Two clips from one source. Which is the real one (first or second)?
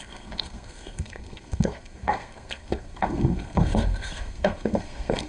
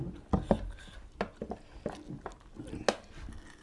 second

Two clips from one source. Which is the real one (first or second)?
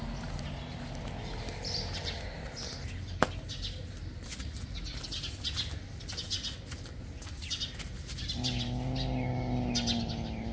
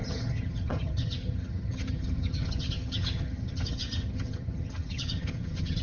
first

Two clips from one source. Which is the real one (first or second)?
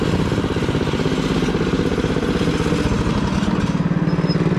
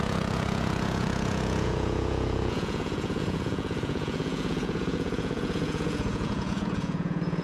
first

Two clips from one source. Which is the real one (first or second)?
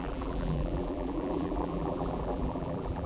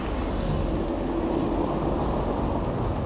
second